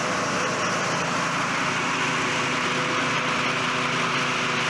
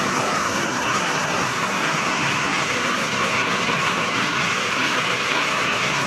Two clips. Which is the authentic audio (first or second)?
first